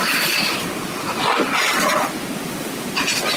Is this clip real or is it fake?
real